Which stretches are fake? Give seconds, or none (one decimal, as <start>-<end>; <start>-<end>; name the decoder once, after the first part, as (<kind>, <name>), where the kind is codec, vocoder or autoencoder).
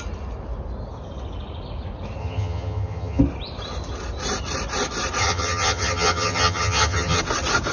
2.2-3.2 (vocoder, HiFi-GAN); 5.2-7.2